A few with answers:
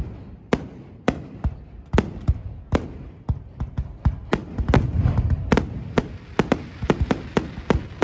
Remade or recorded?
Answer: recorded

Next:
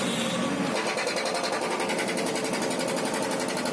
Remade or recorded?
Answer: recorded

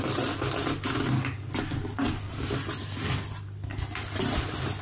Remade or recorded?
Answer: recorded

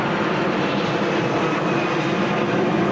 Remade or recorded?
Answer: recorded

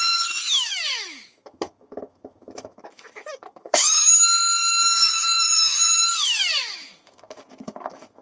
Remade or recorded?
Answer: remade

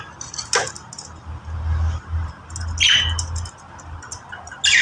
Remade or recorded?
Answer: recorded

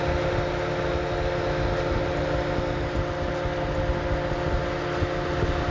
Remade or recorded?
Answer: recorded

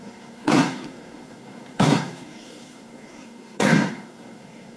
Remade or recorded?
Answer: remade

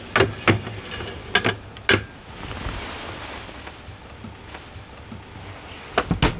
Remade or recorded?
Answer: recorded